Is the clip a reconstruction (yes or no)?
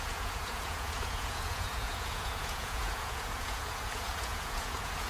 yes